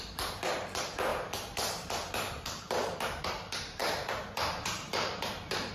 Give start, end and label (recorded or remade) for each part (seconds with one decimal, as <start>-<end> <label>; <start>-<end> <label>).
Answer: 0.0-5.7 remade